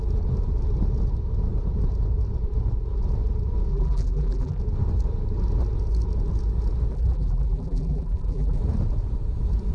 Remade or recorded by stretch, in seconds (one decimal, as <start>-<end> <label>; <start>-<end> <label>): 0.0-3.7 recorded; 3.7-4.6 remade; 4.6-6.9 recorded; 6.9-8.6 remade; 8.6-9.7 recorded